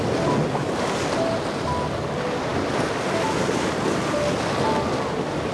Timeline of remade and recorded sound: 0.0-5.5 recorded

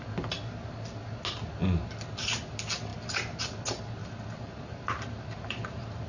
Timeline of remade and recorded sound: 0.0-4.0 recorded; 4.0-6.1 remade

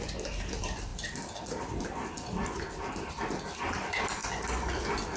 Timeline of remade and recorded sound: 0.0-4.2 remade; 4.2-4.8 recorded; 4.8-5.2 remade

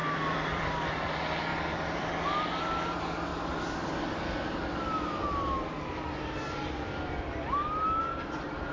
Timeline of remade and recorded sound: 0.0-0.9 remade; 0.9-1.5 recorded; 1.5-2.1 remade; 2.1-8.7 recorded

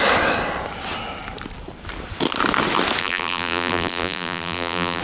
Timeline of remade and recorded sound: 0.0-3.0 recorded; 3.0-5.0 remade